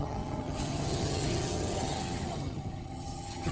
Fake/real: fake